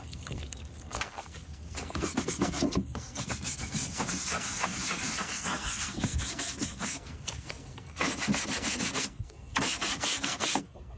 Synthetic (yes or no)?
yes